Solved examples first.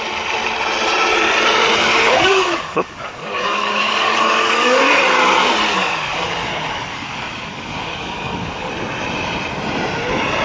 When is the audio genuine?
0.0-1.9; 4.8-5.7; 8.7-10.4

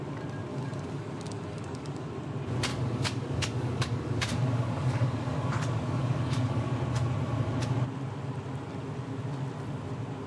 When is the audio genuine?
0.0-0.5; 2.1-2.7; 6.7-10.3

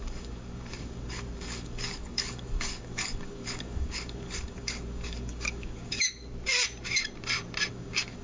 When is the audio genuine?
6.2-7.7